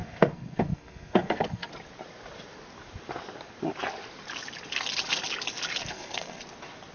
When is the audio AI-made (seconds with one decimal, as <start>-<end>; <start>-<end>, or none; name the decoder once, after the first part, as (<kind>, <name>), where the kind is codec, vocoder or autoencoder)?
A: 0.0-1.7 (codec, SNAC); 5.8-6.4